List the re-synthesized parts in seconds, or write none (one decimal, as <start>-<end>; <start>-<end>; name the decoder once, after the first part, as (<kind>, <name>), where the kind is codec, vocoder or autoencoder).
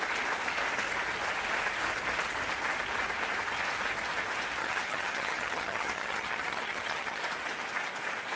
4.6-7.2 (vocoder, HiFi-GAN)